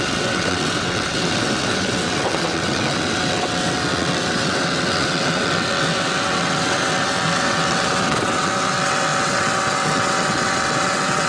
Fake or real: fake